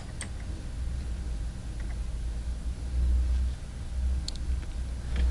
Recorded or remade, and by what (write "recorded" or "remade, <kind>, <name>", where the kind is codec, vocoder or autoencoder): recorded